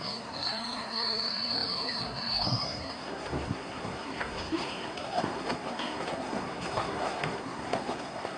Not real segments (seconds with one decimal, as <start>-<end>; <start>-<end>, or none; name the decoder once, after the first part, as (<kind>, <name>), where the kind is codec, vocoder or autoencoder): 0.0-8.4 (codec, SNAC)